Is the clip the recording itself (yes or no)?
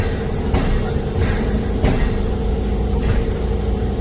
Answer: yes